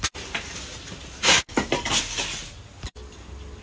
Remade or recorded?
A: recorded